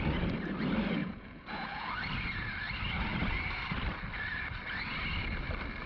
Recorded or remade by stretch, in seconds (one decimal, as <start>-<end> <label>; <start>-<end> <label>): 0.0-1.0 recorded; 1.0-1.9 remade; 1.9-5.9 recorded